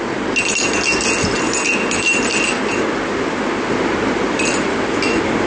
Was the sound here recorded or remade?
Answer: recorded